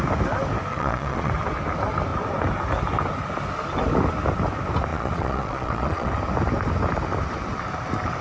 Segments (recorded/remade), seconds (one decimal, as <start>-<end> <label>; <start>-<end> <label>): 0.0-0.7 recorded; 0.7-1.3 remade; 1.3-4.9 recorded; 4.9-6.1 remade; 6.1-8.2 recorded